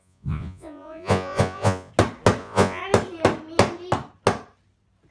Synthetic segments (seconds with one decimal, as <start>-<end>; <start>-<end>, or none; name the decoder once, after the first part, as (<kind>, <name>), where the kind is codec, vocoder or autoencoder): 0.0-1.9 (vocoder, Vocos); 2.4-2.8